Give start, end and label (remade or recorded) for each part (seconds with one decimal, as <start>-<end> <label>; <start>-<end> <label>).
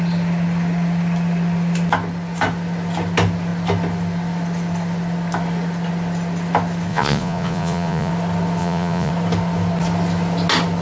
0.0-6.9 recorded; 6.9-8.1 remade; 8.1-8.6 recorded; 8.6-9.1 remade; 9.1-10.8 recorded